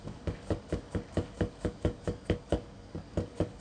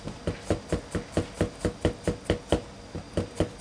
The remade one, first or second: first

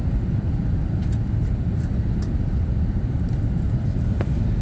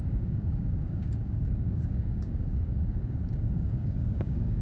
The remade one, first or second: second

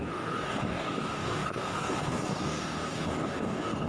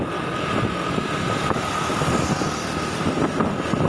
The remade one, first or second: first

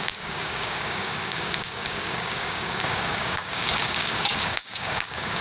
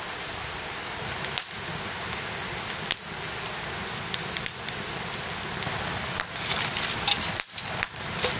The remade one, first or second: first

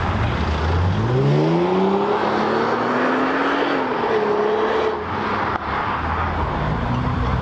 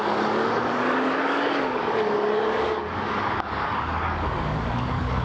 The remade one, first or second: second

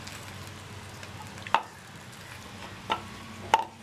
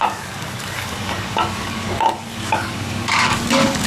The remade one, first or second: second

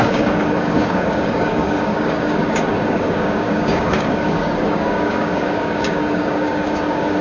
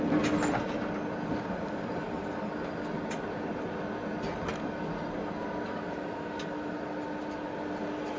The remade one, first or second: first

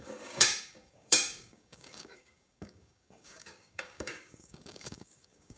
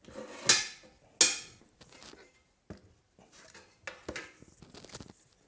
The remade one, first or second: first